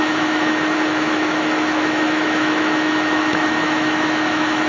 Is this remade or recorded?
remade